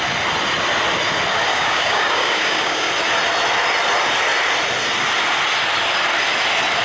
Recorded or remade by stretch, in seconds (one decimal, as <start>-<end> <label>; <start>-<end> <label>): 0.0-1.5 recorded; 1.5-2.9 remade; 2.9-6.8 recorded